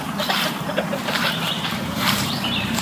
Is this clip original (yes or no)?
no